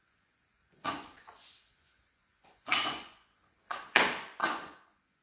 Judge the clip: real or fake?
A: fake